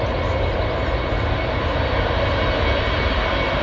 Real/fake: real